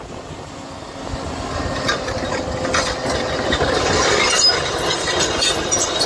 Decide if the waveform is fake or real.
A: real